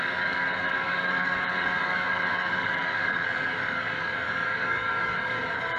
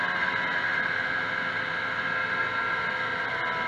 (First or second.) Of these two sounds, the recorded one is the second